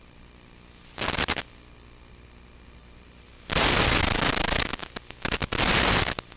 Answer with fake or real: real